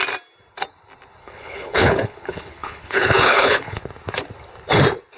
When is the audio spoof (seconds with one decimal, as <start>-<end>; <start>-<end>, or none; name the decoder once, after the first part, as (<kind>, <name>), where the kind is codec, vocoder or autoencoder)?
1.2-3.8 (codec, HILCodec)